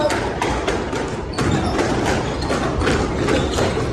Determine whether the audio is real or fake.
real